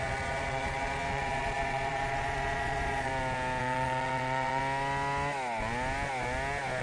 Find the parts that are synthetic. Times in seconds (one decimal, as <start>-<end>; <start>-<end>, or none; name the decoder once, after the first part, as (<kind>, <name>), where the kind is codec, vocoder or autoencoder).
0.0-3.1 (vocoder, Vocos); 3.6-4.6